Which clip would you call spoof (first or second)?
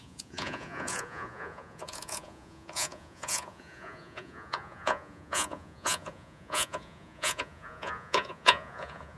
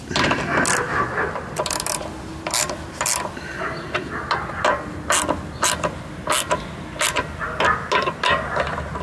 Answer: first